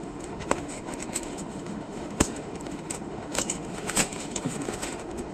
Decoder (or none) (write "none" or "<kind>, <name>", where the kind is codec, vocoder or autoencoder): autoencoder, DAC-VAE